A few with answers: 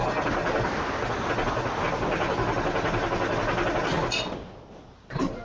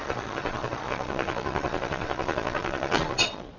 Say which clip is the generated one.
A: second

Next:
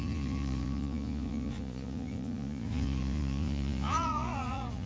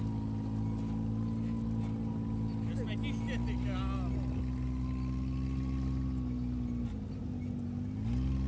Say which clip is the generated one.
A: first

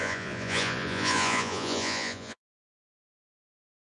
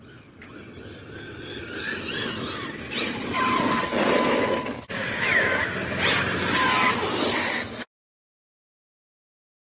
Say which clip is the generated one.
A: first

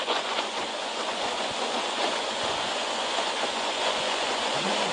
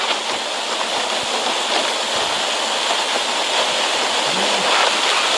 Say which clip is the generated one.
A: first